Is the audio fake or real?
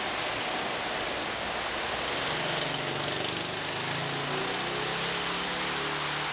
real